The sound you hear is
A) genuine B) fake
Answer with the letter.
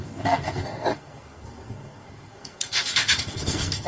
B